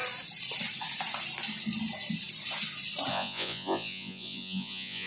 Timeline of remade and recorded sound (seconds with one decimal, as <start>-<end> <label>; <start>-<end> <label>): 0.0-3.1 recorded; 3.1-5.1 remade